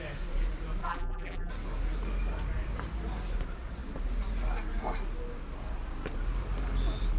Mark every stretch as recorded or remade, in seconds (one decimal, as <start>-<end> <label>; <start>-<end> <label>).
0.0-0.8 recorded; 0.8-1.5 remade; 1.5-7.2 recorded